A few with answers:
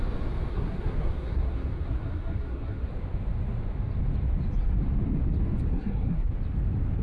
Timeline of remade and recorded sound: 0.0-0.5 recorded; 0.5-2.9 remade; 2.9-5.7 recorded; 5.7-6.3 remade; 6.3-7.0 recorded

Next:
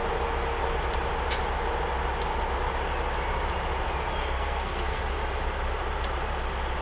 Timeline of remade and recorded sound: 0.0-4.2 recorded; 4.2-5.0 remade; 5.0-6.8 recorded